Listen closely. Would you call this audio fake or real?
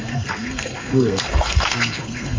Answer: fake